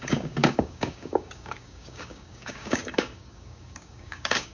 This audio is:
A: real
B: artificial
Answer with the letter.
B